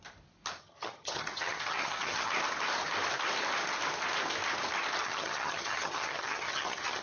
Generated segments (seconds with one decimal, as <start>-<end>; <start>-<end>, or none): 0.6-2.3; 5.0-7.0